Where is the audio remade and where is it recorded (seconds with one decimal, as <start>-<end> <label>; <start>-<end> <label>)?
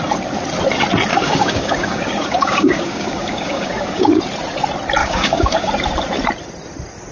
0.0-1.1 recorded; 1.1-4.2 remade; 4.2-5.0 recorded; 5.0-5.7 remade; 5.7-7.1 recorded